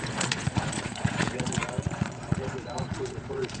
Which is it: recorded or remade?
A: remade